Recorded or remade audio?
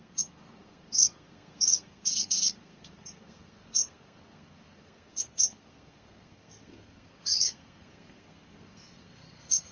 remade